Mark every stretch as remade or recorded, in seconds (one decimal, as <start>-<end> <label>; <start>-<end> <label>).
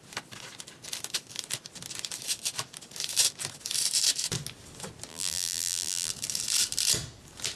0.0-5.1 recorded; 5.1-6.1 remade; 6.1-7.6 recorded